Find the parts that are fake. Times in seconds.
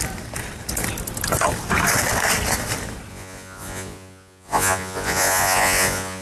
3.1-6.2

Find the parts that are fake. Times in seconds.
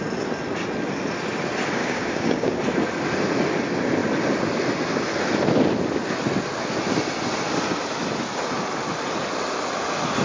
1.8-2.6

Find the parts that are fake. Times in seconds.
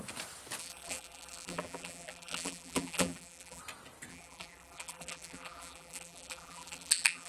0.6-3.6; 4.1-7.3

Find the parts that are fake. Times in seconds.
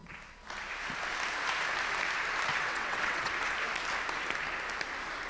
2.5-3.3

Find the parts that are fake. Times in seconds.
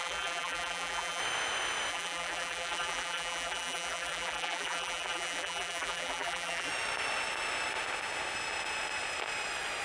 0.0-1.2; 1.9-6.7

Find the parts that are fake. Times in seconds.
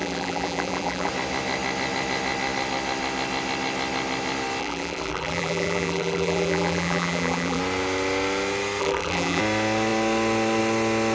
0.0-1.1; 4.6-7.6; 8.8-9.4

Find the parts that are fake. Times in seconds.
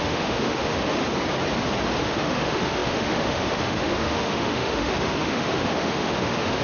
0.0-1.0; 2.0-6.6